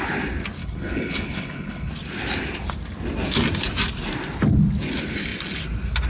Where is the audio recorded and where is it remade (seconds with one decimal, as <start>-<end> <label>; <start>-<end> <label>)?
0.0-0.6 recorded; 0.6-1.9 remade; 1.9-6.1 recorded